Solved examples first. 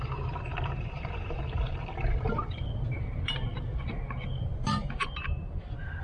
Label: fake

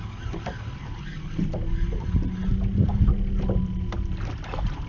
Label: real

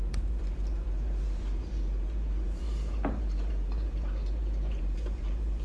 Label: fake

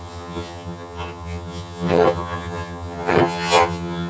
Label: fake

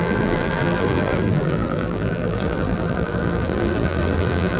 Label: fake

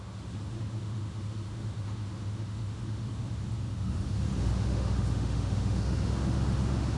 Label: fake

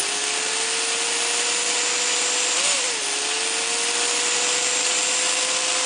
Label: real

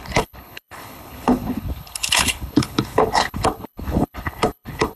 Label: fake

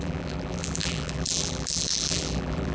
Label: fake